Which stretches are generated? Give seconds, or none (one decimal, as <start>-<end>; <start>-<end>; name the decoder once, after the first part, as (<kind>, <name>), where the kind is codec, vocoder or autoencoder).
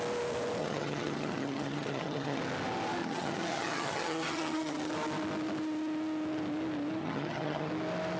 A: 0.6-2.4 (vocoder, HiFi-GAN); 3.0-4.9; 7.0-7.7